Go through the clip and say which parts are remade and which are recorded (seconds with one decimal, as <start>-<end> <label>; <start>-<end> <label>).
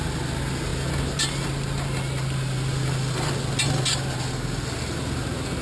0.0-5.6 recorded